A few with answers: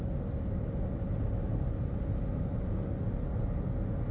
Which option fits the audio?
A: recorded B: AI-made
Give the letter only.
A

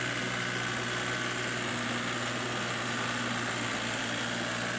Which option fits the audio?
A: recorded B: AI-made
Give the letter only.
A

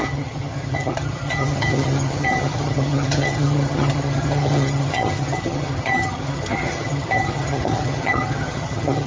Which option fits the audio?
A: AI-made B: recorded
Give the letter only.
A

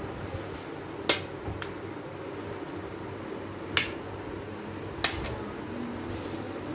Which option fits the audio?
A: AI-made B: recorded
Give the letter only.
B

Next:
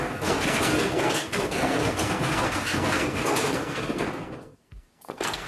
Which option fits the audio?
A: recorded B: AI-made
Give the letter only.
B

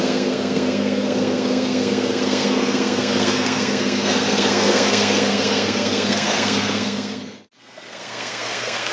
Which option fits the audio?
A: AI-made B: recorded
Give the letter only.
A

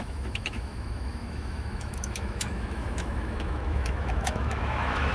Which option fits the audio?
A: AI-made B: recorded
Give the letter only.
A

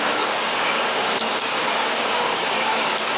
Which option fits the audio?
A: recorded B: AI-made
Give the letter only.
B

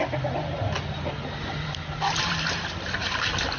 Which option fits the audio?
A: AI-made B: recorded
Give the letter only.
B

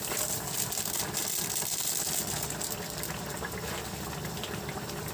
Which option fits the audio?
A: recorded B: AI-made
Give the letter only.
A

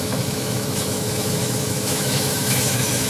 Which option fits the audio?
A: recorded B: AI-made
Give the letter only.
B